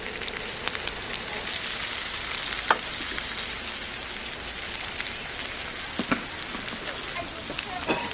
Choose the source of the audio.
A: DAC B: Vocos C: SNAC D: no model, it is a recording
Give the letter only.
D